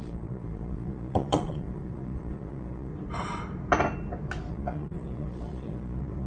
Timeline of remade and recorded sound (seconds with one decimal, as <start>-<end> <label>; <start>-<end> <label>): 0.0-2.9 remade; 2.9-4.5 recorded; 4.5-6.3 remade